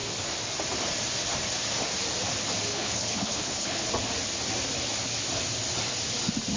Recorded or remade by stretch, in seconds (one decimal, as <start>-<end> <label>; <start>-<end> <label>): 0.0-2.7 recorded; 2.7-3.9 remade; 3.9-6.6 recorded